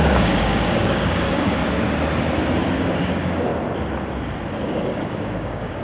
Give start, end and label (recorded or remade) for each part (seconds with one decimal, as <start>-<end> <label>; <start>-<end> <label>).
0.0-1.6 remade; 1.6-3.0 recorded; 3.0-3.5 remade; 3.5-4.6 recorded; 4.6-5.8 remade